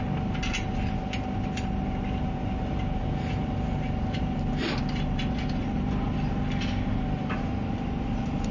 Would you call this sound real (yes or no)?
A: yes